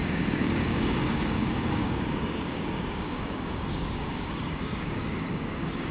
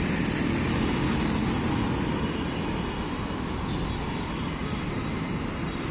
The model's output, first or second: first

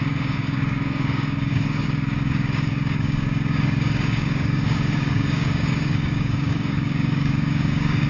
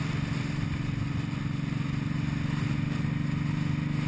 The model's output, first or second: first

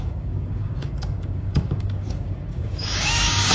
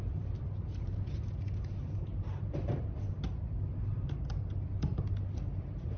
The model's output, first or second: first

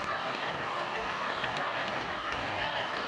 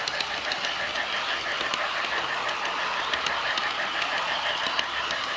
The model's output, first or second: first